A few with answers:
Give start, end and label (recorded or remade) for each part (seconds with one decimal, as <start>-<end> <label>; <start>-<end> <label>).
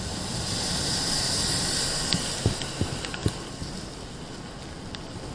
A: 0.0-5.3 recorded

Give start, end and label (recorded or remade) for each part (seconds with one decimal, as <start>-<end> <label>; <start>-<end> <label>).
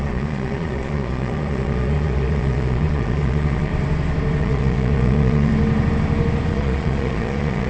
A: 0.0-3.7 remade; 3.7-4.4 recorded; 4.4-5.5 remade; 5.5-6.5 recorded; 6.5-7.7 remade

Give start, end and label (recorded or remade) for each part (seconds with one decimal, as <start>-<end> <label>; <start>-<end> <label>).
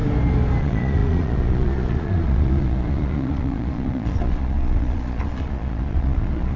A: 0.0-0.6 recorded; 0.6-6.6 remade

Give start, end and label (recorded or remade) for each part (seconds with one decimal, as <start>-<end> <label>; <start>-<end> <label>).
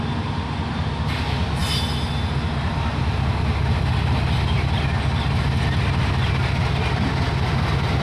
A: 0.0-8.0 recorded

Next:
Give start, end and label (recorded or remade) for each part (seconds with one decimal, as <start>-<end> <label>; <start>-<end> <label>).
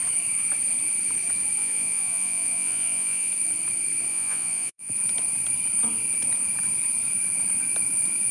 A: 0.0-1.6 recorded; 1.6-3.3 remade; 3.3-4.1 recorded; 4.1-4.9 remade; 4.9-8.3 recorded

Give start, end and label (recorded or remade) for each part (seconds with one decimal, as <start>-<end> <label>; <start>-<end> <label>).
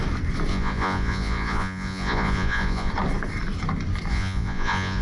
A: 0.0-0.5 recorded; 0.5-2.9 remade; 2.9-4.1 recorded; 4.1-5.0 remade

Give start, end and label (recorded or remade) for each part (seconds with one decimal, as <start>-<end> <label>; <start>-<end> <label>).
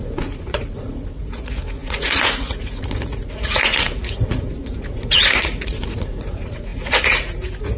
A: 0.0-7.8 remade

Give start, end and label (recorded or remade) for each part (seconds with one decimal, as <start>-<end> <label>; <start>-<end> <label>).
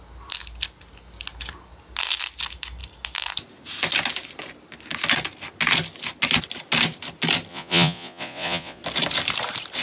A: 0.0-7.5 recorded; 7.5-8.8 remade; 8.8-9.8 recorded